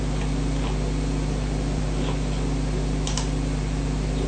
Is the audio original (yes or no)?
yes